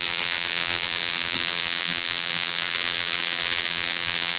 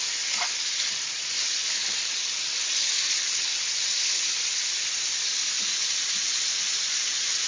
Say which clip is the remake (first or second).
first